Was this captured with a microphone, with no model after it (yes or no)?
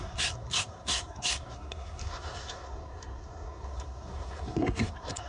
no